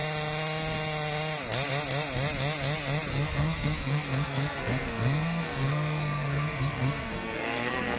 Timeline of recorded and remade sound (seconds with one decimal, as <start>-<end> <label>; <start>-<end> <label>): 0.0-3.1 recorded; 3.1-8.0 remade